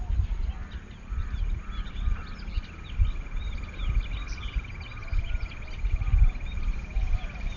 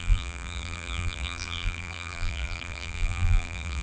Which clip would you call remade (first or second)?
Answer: second